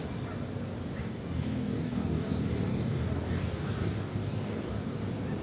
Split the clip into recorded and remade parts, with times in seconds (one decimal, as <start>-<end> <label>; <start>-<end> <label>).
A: 0.0-1.0 recorded; 1.0-2.3 remade; 2.3-2.7 recorded; 2.7-5.0 remade; 5.0-5.4 recorded